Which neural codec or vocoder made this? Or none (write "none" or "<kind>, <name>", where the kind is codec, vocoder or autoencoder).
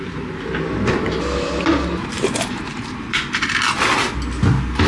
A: none